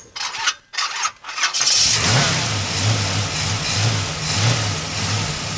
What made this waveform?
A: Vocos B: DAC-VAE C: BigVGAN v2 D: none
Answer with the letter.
D